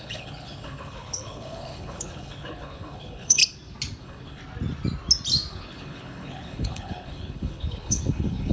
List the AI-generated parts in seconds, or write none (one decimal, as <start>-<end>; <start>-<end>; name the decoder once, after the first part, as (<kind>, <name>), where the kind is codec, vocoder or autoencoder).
0.0-3.4 (codec, HILCodec); 4.0-4.4; 5.5-8.5